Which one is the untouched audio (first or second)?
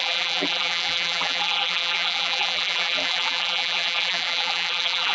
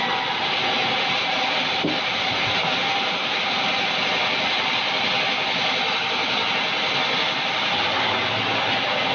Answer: second